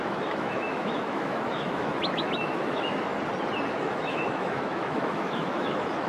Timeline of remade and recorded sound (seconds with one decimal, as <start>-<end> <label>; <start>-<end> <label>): 0.0-3.1 remade; 3.1-3.7 recorded; 3.7-6.1 remade